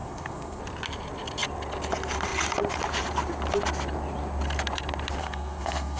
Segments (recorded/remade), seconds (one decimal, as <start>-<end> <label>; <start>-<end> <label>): 0.0-0.6 remade; 0.6-5.2 recorded; 5.2-6.0 remade